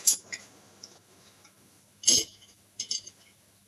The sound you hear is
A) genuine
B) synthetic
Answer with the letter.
B